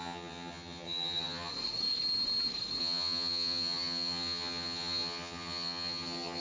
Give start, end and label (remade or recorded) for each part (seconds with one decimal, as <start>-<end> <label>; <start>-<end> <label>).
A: 0.0-1.5 remade; 1.5-2.8 recorded; 2.8-6.4 remade